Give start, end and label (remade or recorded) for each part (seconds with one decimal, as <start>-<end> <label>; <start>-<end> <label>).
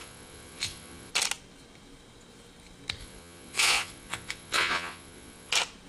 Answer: 0.0-1.1 remade; 1.1-3.0 recorded; 3.0-5.5 remade; 5.5-5.9 recorded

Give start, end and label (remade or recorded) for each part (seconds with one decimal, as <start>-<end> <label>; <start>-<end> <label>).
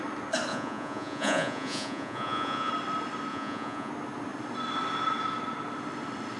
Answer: 0.0-0.5 recorded; 0.5-2.7 remade; 2.7-3.3 recorded; 3.3-3.9 remade; 3.9-6.4 recorded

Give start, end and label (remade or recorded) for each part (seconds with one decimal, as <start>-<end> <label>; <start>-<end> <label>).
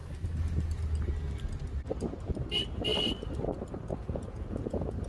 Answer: 0.0-3.9 recorded; 3.9-5.1 remade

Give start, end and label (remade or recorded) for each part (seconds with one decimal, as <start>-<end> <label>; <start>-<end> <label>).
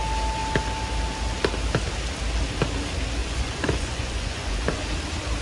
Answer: 0.0-3.2 recorded; 3.2-4.8 remade; 4.8-5.4 recorded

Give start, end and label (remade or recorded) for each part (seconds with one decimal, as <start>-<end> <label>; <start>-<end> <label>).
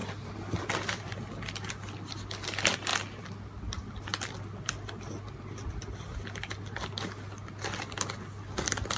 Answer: 0.0-9.0 recorded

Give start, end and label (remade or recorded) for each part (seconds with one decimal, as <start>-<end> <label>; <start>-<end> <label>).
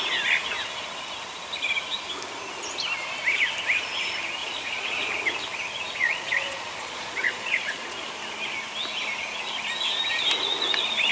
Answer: 0.0-4.4 recorded; 4.4-5.1 remade; 5.1-6.0 recorded; 6.0-8.0 remade; 8.0-11.1 recorded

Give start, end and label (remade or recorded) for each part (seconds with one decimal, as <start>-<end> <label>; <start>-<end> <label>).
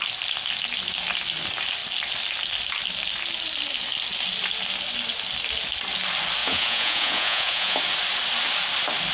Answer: 0.0-6.4 recorded; 6.4-7.8 remade; 7.8-9.1 recorded